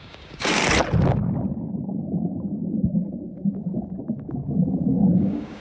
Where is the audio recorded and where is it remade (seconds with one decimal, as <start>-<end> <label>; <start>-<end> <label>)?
0.0-0.6 remade; 0.6-1.6 recorded; 1.6-3.3 remade; 3.3-4.0 recorded; 4.0-5.6 remade